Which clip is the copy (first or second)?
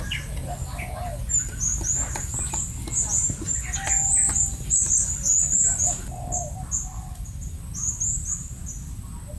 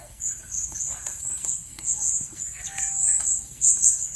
second